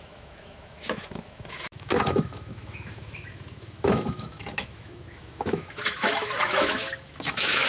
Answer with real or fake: fake